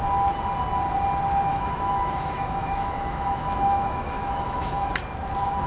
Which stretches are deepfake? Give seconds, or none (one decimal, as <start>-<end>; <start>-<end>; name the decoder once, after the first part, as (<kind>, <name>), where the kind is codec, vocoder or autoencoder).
1.5-4.9 (autoencoder, DAC-VAE)